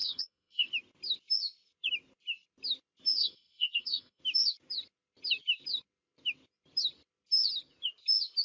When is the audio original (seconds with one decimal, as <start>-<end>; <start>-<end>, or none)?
0.7-3.2; 4.2-8.4